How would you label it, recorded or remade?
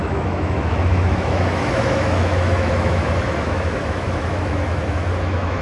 remade